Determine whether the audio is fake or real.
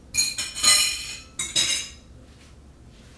real